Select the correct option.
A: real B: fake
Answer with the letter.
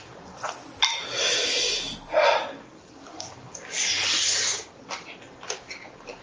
A